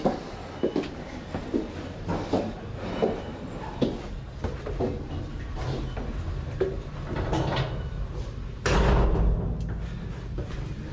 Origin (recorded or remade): recorded